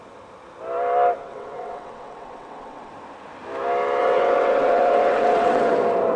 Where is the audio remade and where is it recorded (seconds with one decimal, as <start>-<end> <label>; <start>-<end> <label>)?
0.0-1.2 recorded; 1.2-2.9 remade; 2.9-4.0 recorded; 4.0-5.7 remade; 5.7-6.2 recorded